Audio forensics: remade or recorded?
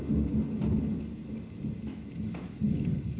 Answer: recorded